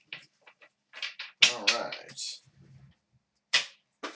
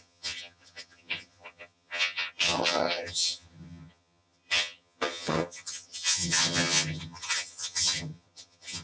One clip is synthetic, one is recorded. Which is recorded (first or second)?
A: first